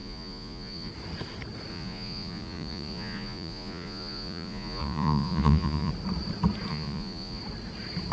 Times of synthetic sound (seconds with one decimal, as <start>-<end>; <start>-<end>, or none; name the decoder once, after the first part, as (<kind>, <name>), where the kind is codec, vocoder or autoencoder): 0.0-0.9 (vocoder, Vocos); 1.7-5.9; 6.7-7.4